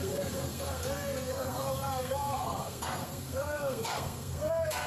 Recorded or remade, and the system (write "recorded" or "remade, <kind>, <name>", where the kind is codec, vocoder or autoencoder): remade, codec, SNAC